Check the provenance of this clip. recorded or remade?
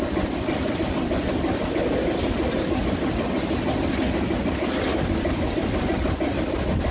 recorded